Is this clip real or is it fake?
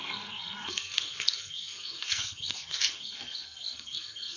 fake